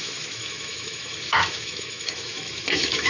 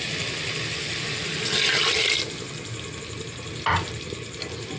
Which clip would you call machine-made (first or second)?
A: first